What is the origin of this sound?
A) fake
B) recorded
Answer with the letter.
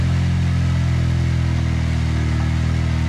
B